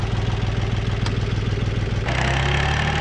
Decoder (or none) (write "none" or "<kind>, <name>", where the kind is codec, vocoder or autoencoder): none